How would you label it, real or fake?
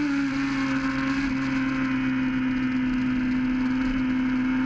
real